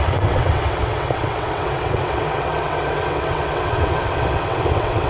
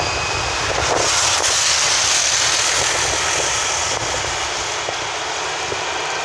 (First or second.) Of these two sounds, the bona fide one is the second